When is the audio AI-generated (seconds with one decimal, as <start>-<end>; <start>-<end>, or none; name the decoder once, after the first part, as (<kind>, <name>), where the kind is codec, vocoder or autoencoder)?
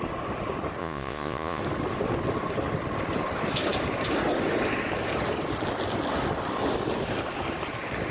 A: 0.8-1.6 (vocoder, Vocos)